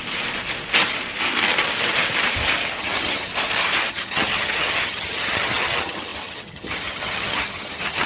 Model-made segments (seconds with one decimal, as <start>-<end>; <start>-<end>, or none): 2.8-3.3; 3.9-8.1